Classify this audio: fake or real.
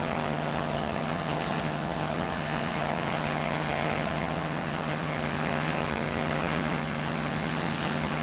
fake